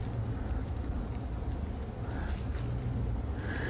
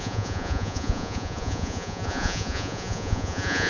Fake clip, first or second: second